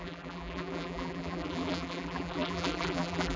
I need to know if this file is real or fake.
fake